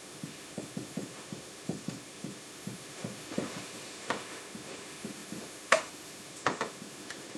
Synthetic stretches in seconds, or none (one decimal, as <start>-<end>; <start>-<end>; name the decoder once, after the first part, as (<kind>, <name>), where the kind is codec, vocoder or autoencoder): 0.0-7.4 (autoencoder, DAC-VAE)